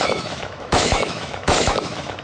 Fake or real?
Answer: fake